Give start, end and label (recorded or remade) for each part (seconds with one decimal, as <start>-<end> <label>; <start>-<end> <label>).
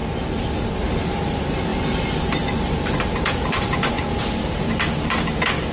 0.0-1.7 recorded; 1.7-5.1 remade; 5.1-5.7 recorded